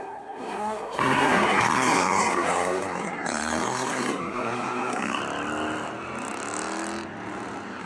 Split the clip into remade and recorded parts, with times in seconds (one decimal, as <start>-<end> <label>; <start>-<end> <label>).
0.0-5.2 remade; 5.2-7.8 recorded